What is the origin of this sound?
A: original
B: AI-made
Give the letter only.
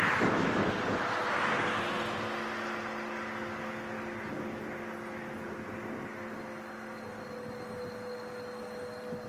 A